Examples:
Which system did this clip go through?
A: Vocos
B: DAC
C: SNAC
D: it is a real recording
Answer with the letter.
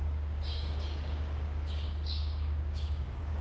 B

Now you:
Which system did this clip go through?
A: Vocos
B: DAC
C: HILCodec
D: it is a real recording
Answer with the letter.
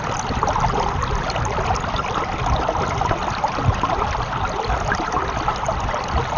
D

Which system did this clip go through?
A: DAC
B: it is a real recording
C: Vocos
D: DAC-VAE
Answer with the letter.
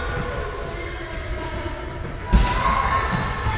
B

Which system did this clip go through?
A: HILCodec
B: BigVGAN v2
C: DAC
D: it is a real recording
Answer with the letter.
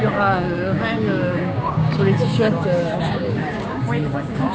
C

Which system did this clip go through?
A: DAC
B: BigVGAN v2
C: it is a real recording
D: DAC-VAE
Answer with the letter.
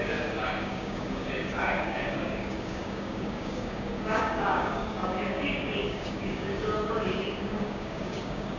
A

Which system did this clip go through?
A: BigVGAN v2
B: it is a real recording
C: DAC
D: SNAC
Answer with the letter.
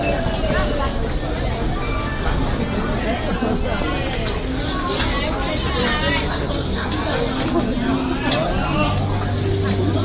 B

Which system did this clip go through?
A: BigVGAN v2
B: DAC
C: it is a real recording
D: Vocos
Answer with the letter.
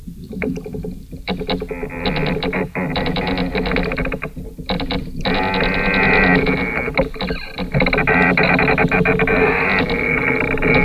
C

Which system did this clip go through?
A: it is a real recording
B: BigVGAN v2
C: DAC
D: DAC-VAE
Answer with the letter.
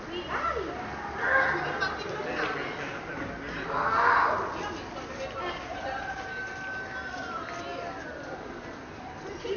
A